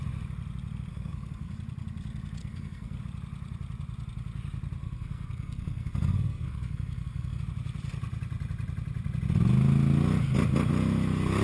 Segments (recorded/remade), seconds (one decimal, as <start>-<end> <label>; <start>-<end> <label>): 0.0-0.9 recorded; 0.9-1.5 remade; 1.5-2.4 recorded; 2.4-3.0 remade; 3.0-4.8 recorded; 4.8-7.4 remade; 7.4-11.4 recorded